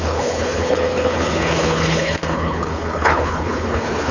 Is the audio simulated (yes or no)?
yes